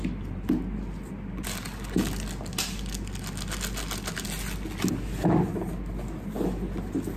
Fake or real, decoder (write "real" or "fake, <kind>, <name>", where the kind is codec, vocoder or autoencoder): real